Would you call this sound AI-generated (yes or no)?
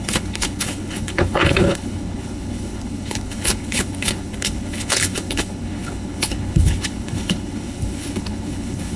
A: yes